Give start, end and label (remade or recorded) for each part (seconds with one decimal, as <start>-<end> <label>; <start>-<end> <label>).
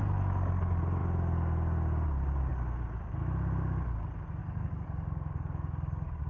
0.0-4.4 recorded; 4.4-6.3 remade